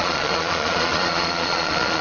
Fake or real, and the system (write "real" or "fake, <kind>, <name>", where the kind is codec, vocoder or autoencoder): fake, vocoder, Vocos